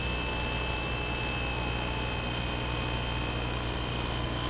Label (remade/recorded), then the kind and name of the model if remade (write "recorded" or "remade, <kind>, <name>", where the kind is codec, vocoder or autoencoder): recorded